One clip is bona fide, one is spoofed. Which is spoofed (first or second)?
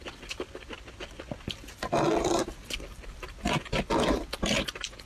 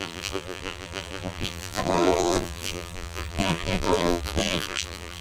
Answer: second